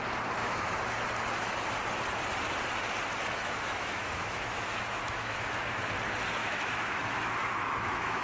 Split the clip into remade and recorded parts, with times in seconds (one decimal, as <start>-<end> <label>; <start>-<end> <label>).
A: 0.0-0.4 recorded; 0.4-0.9 remade; 0.9-3.2 recorded; 3.2-5.8 remade; 5.8-6.4 recorded; 6.4-8.2 remade